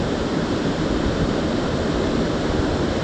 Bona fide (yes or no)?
yes